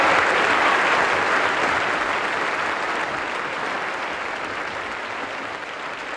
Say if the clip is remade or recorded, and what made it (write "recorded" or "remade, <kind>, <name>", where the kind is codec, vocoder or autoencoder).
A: recorded